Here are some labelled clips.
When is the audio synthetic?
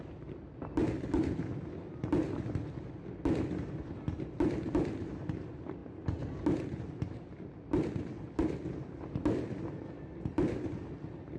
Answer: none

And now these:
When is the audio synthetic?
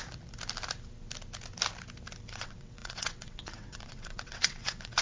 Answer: 2.2-5.0 (vocoder, WaveNeXt)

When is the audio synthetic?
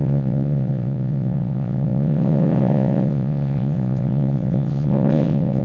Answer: 0.0-5.6 (vocoder, WaveNeXt)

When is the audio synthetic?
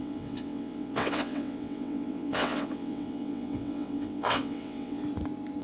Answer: 0.0-5.0 (vocoder, WaveNeXt)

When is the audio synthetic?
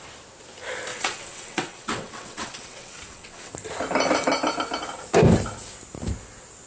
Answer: 0.9-3.5 (vocoder, WaveNeXt)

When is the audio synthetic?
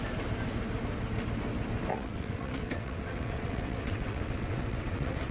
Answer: 1.9-5.3 (vocoder, WaveNeXt)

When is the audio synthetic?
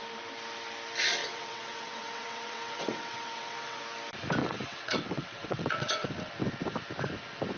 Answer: 1.2-3.8 (vocoder, WaveNeXt); 4.4-6.1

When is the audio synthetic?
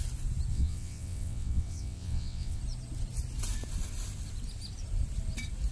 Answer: 0.5-2.6 (vocoder, WaveNeXt)